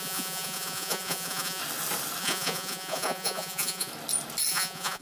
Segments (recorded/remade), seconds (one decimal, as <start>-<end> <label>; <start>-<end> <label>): 0.0-1.6 remade; 1.6-2.2 recorded; 2.2-3.9 remade; 3.9-4.5 recorded; 4.5-5.0 remade